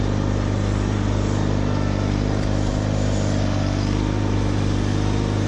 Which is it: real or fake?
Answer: real